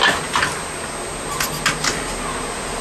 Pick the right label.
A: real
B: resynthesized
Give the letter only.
A